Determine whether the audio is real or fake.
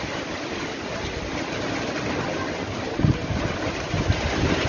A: real